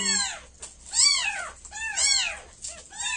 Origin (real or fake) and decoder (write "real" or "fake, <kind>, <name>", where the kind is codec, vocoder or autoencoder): real